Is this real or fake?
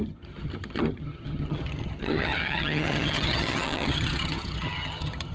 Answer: fake